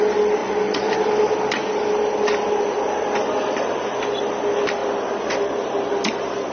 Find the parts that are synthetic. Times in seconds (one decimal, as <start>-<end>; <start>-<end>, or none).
none